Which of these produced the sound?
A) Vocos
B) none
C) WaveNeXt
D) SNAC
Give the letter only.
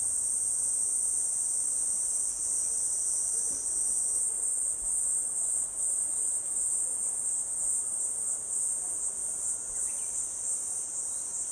B